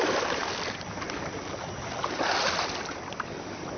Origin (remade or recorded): recorded